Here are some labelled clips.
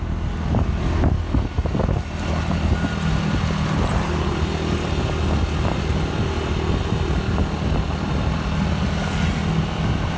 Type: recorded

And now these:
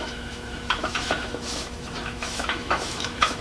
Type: remade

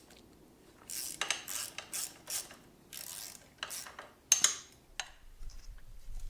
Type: recorded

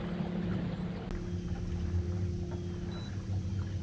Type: recorded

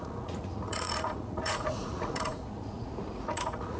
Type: remade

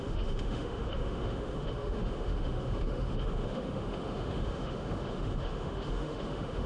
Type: remade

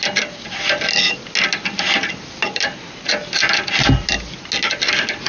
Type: recorded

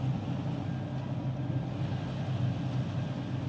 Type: recorded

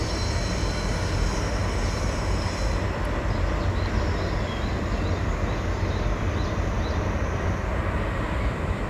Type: recorded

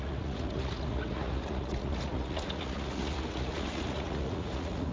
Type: remade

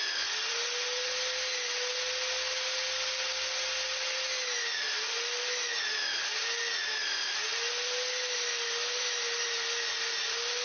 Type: recorded